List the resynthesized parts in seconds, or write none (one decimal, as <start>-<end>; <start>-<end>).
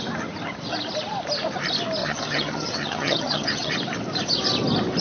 2.0-3.7